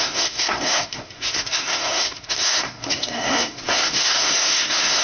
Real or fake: fake